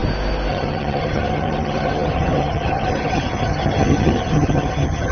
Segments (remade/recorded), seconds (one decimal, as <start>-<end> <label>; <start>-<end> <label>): 0.0-0.5 recorded; 0.5-5.1 remade